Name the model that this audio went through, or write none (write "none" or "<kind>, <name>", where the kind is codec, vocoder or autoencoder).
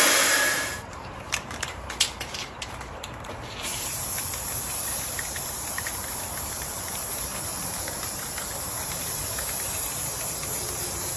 vocoder, BigVGAN v2